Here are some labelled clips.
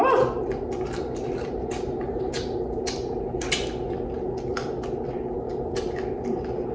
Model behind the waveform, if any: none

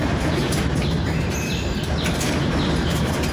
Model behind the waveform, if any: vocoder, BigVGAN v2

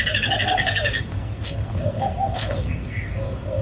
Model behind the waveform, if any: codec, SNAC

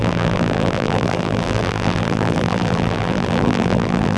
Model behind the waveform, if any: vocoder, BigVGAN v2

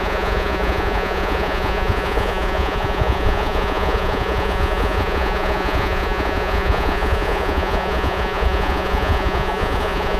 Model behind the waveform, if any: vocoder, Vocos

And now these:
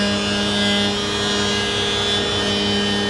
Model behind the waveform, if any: none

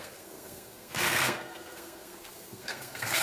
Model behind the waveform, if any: codec, SNAC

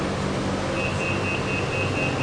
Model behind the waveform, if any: none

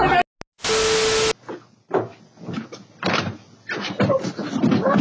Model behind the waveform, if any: none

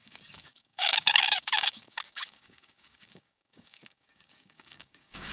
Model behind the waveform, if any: codec, DAC